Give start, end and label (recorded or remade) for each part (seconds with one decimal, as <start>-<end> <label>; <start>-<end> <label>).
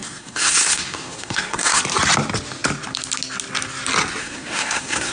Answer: 0.0-1.8 remade; 1.8-4.2 recorded; 4.2-5.1 remade